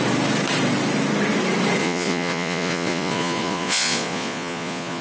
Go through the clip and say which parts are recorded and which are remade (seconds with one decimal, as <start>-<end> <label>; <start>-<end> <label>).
0.0-1.8 recorded; 1.8-5.0 remade